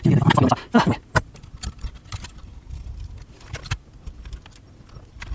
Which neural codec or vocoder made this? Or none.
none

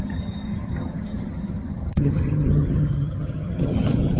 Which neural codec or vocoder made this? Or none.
vocoder, HiFi-GAN